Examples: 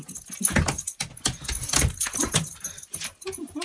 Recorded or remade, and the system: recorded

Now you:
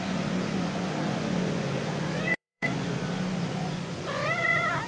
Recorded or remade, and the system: remade, vocoder, Vocos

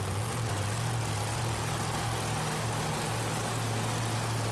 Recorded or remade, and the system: recorded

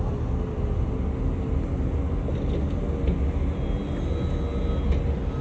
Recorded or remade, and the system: recorded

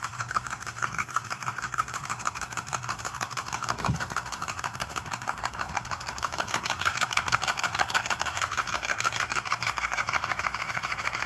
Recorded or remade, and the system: remade, codec, SNAC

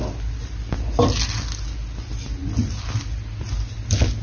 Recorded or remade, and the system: recorded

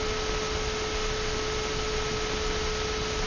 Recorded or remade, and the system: recorded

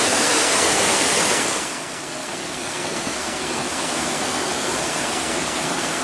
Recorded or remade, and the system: remade, codec, SNAC